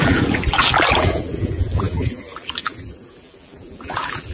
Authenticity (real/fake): fake